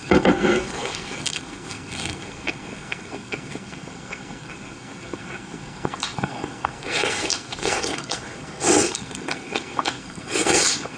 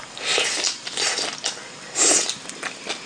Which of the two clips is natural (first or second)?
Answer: second